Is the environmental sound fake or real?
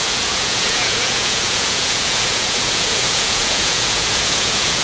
fake